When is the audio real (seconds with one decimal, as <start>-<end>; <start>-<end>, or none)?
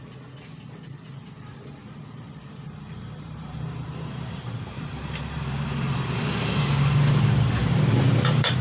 0.0-1.8; 6.1-7.6